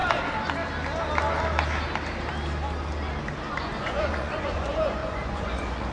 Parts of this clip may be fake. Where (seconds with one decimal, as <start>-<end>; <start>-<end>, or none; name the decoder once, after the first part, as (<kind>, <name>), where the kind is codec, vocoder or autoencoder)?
3.5-5.9 (vocoder, Vocos)